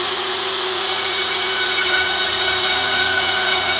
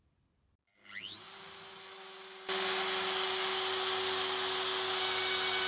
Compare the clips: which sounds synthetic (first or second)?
first